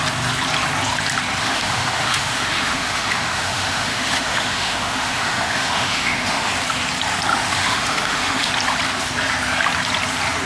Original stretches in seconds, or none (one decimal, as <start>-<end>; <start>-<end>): 0.0-1.4; 6.5-7.3; 8.5-10.5